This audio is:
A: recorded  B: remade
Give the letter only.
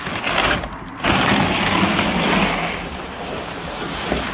A